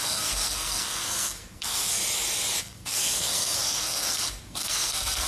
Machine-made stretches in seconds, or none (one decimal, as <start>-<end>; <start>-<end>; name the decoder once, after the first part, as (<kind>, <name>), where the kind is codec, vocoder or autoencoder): 0.0-2.0 (codec, SNAC); 2.6-5.3